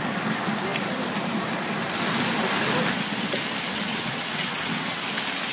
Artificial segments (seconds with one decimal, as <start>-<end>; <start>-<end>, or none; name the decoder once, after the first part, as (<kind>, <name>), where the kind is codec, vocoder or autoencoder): 3.9-5.0 (vocoder, WaveNeXt)